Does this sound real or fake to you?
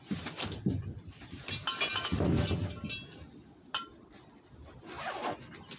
real